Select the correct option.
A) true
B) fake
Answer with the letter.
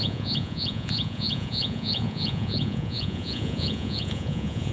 B